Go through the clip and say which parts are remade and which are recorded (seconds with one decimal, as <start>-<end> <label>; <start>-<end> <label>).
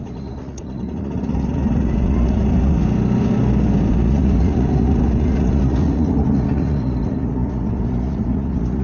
0.0-2.8 remade; 2.8-3.9 recorded; 3.9-8.8 remade